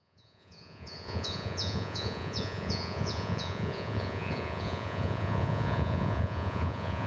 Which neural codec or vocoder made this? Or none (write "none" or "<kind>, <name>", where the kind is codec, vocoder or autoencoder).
vocoder, Vocos